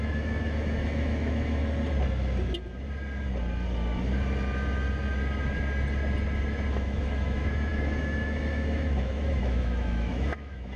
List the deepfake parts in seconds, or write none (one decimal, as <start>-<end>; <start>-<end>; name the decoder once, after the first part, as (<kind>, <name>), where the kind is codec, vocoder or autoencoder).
0.0-1.6 (autoencoder, DAC-VAE); 6.7-10.8